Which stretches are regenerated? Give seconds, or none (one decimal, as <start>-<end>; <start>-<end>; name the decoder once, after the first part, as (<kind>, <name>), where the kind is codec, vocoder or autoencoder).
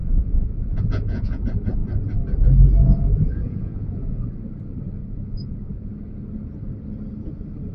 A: 0.0-1.4 (vocoder, Vocos); 2.8-4.3; 5.0-5.9